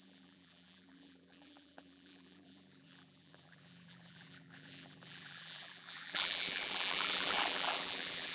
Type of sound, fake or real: fake